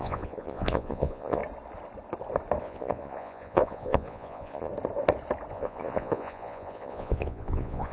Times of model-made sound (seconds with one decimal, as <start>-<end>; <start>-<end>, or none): 0.0-1.4; 2.6-4.7; 5.5-7.9